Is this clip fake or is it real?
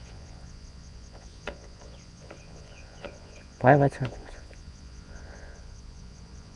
fake